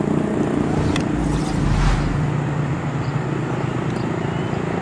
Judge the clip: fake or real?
real